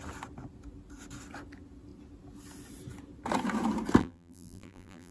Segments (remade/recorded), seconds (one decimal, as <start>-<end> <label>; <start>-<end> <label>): 0.0-4.0 recorded; 4.0-5.1 remade